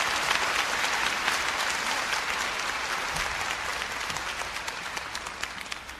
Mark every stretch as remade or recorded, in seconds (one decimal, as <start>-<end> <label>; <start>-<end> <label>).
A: 0.0-6.0 recorded